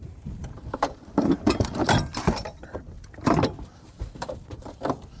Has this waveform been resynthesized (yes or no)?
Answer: yes